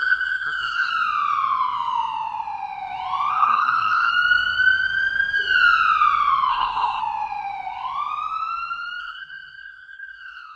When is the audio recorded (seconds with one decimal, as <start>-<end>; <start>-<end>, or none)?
0.9-3.3; 4.1-6.5; 7.0-9.0